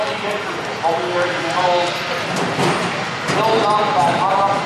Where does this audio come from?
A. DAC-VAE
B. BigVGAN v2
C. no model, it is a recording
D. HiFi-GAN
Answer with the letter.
C